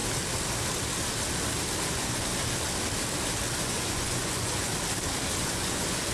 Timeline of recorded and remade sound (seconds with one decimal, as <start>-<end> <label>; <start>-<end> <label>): 0.0-1.8 recorded; 1.8-2.3 remade; 2.3-3.6 recorded; 3.6-4.7 remade; 4.7-5.4 recorded; 5.4-6.1 remade